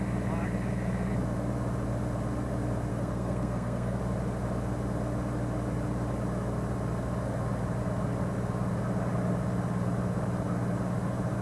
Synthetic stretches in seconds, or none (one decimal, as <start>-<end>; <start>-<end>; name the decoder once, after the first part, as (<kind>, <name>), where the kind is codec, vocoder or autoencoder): 2.9-4.0 (codec, SNAC)